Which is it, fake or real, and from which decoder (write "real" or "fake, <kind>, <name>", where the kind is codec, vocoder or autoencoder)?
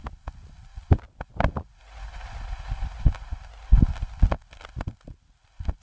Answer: real